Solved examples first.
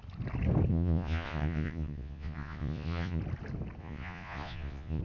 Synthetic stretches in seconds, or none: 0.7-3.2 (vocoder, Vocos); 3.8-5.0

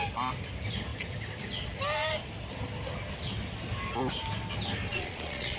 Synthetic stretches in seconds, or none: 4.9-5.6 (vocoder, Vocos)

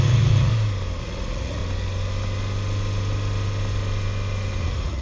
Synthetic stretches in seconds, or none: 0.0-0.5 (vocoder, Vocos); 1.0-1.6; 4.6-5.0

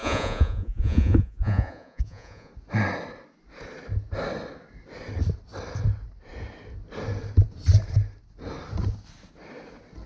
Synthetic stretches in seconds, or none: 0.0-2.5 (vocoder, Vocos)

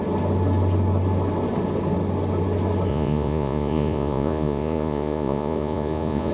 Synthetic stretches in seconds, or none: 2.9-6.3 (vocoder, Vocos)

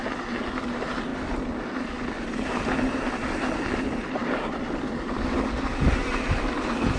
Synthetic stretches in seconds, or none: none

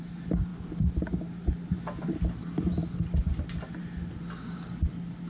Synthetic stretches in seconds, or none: none